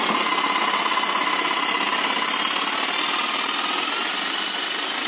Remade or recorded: recorded